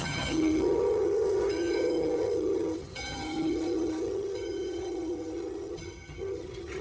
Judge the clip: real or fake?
fake